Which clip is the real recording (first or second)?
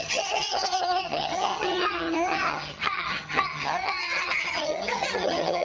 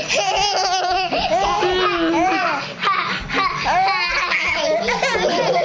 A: second